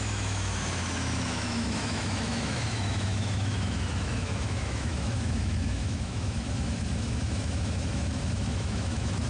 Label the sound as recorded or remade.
remade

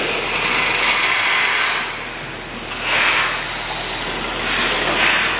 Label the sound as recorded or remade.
recorded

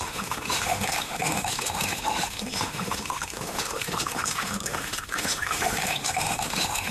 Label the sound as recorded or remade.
remade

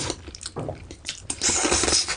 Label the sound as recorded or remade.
recorded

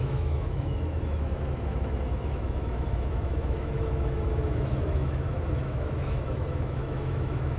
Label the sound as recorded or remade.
remade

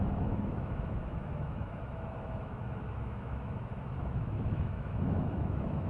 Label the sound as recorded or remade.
remade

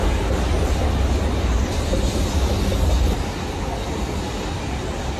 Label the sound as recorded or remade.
recorded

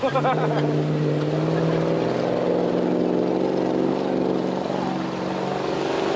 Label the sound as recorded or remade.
recorded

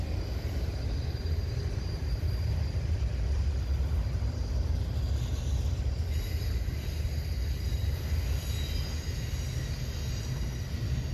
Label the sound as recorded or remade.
recorded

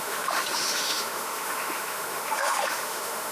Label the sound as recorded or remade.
remade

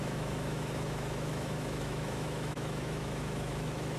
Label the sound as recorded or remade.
remade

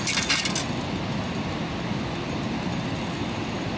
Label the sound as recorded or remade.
recorded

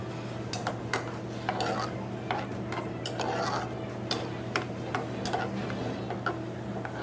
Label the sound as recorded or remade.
recorded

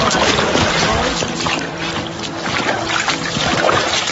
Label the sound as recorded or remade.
recorded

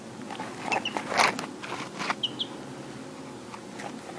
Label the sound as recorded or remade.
recorded